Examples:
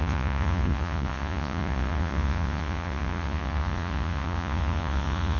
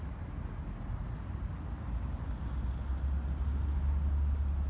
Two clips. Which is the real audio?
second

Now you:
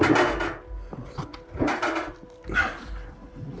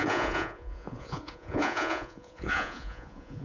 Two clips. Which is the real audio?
first